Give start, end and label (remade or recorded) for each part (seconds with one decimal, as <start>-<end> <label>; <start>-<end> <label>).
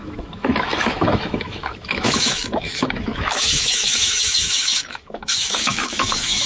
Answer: 0.0-6.5 remade